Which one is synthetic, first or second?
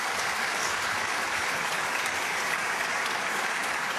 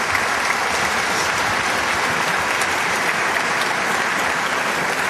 first